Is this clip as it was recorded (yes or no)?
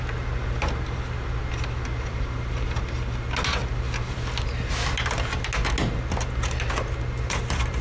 yes